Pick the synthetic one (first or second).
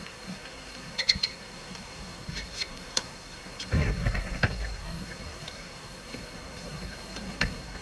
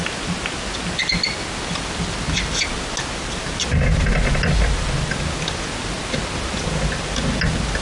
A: first